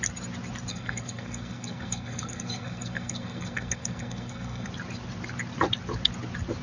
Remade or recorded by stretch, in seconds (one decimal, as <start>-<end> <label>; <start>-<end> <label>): 0.0-0.7 recorded; 0.7-4.7 remade; 4.7-6.6 recorded

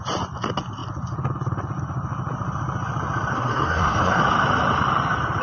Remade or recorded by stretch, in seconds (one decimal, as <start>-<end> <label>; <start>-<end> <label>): 0.0-3.3 recorded; 3.3-4.2 remade; 4.2-5.4 recorded

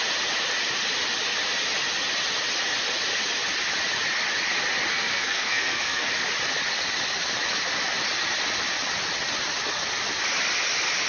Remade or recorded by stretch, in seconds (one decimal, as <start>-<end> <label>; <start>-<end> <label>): 0.0-4.9 recorded; 4.9-6.1 remade; 6.1-11.1 recorded

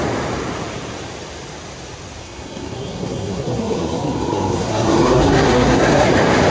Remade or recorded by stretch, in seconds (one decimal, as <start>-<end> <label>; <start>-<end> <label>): 0.0-2.2 recorded; 2.2-6.1 remade; 6.1-6.5 recorded

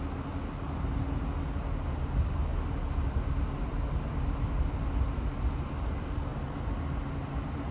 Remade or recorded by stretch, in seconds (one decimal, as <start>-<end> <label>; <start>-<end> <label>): 0.0-7.7 recorded

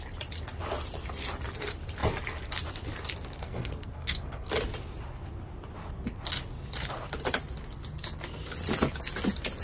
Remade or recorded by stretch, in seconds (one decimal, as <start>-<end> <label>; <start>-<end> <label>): 0.0-3.4 recorded; 3.4-4.5 remade; 4.5-9.6 recorded